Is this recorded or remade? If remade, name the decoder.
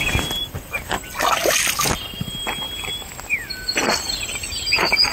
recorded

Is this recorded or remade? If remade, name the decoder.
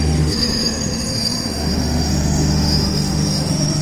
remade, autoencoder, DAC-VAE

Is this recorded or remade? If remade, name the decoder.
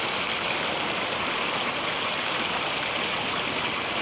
recorded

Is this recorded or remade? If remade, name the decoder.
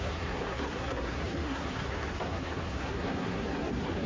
remade, codec, SNAC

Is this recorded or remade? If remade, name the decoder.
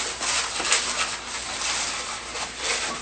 recorded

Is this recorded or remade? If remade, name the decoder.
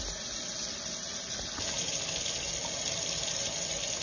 recorded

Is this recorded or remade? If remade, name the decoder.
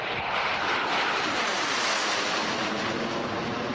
remade, vocoder, BigVGAN v2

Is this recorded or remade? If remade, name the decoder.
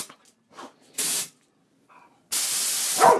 recorded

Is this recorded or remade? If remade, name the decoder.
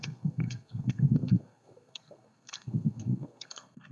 remade, codec, SNAC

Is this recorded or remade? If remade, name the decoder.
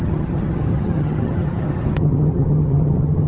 remade, vocoder, HiFi-GAN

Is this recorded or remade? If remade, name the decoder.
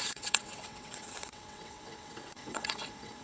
remade, vocoder, WaveNeXt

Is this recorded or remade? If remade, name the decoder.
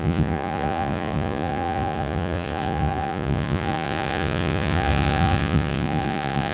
remade, vocoder, Vocos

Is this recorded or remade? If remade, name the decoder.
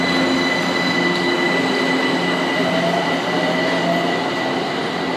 recorded